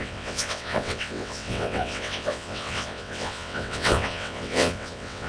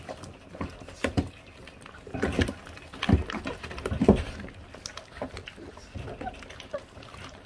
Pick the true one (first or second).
second